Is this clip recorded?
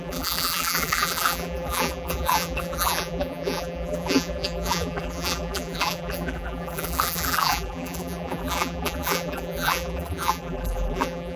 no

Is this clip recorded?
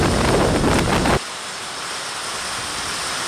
yes